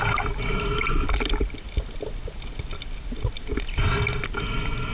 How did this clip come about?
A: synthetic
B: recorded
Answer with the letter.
B